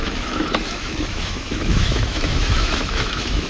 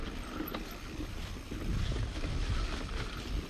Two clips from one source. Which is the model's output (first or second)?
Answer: first